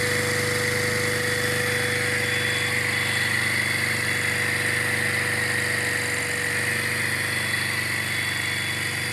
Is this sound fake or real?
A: real